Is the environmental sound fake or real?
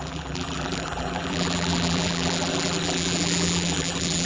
fake